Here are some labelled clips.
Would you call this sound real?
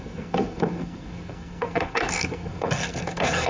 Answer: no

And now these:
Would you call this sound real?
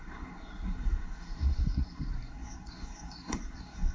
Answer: no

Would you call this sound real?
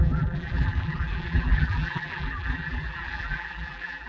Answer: no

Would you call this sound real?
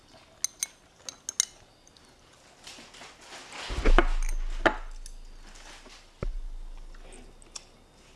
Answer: yes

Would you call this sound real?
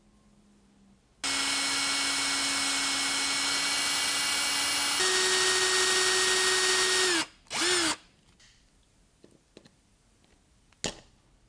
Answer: yes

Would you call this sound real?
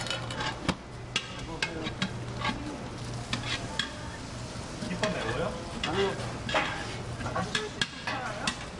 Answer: yes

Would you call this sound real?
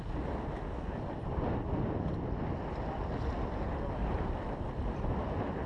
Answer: yes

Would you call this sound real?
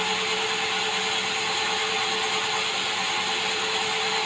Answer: yes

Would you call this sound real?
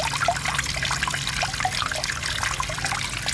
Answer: yes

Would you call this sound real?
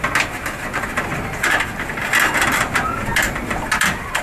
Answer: yes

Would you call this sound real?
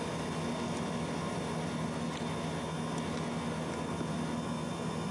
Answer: yes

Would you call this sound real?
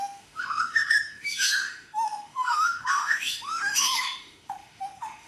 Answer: no